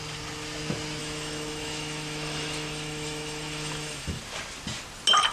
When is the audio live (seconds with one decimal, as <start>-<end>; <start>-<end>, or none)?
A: 0.0-1.0; 4.2-5.3